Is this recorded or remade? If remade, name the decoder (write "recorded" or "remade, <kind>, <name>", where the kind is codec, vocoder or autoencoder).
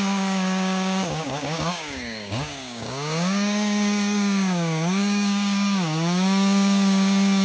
remade, codec, DAC